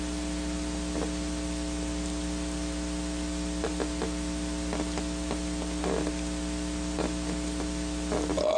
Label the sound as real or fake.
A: real